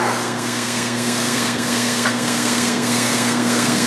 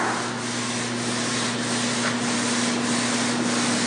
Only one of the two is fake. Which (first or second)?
first